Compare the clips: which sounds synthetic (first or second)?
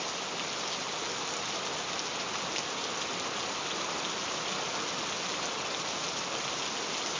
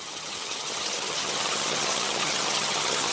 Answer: second